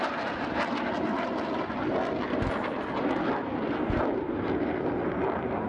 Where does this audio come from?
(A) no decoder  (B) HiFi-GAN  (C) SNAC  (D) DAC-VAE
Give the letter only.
A